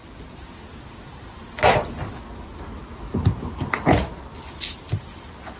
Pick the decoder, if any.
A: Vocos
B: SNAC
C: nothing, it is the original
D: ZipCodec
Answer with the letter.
C